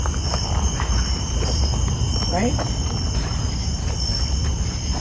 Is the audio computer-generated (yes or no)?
no